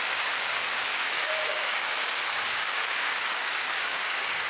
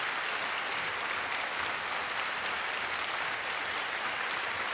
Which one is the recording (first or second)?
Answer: second